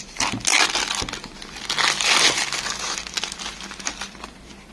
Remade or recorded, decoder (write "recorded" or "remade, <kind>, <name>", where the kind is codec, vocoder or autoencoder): recorded